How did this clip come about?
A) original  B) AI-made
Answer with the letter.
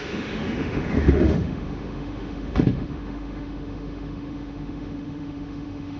B